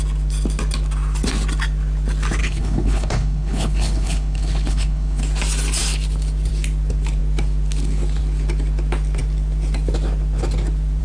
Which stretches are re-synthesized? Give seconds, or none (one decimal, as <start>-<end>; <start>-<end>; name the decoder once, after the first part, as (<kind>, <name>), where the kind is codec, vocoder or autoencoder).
2.4-5.2 (codec, HILCodec)